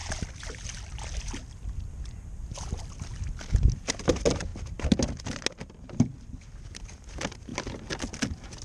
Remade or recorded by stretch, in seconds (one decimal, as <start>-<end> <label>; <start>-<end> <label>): 0.0-8.6 recorded